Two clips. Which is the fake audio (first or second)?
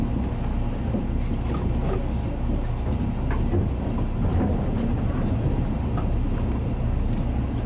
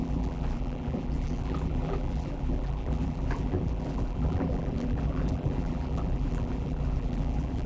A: second